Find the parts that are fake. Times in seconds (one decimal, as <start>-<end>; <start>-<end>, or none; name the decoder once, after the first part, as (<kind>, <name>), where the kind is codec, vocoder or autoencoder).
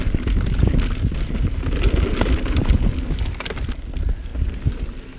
none